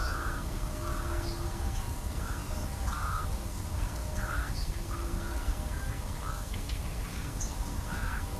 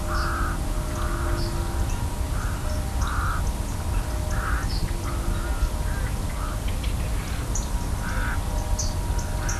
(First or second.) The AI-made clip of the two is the first